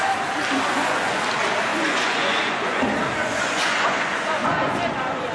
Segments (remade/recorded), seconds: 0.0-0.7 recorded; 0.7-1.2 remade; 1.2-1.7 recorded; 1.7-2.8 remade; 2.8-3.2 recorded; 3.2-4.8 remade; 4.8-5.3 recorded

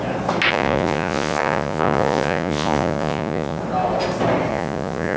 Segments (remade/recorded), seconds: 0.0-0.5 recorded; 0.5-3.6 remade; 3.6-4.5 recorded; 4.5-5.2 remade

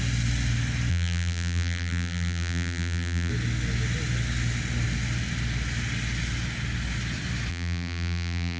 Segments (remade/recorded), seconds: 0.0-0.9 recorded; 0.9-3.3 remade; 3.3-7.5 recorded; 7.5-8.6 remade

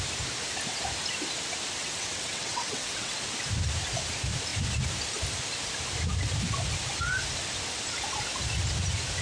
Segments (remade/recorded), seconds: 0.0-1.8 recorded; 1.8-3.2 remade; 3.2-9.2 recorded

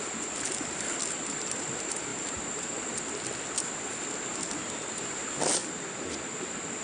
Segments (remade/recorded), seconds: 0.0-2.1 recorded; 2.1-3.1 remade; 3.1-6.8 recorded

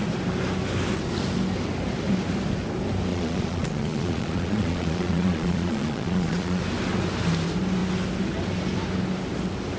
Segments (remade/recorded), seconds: 0.0-3.1 recorded; 3.1-6.6 remade; 6.6-9.8 recorded